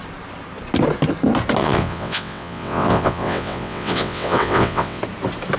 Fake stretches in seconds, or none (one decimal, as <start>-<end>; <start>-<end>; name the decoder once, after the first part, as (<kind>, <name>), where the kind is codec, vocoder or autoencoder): 1.6-5.0 (vocoder, WaveNeXt)